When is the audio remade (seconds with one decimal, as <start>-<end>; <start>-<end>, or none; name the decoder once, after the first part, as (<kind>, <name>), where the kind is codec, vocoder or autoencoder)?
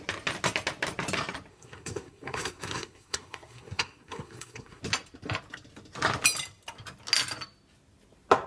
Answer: 1.5-4.8 (codec, SNAC)